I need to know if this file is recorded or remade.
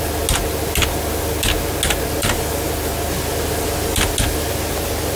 recorded